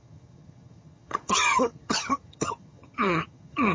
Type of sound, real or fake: fake